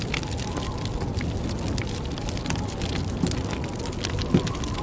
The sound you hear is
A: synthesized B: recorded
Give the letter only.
B